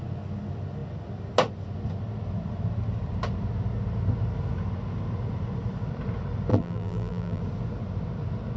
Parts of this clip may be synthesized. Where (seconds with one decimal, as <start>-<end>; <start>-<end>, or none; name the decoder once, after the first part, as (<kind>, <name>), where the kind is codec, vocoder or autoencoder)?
6.5-7.4 (vocoder, BigVGAN v2)